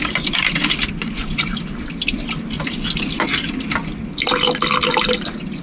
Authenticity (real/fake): real